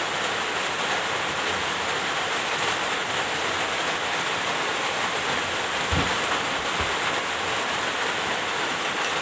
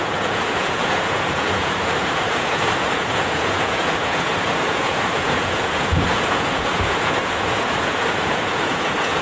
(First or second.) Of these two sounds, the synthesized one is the second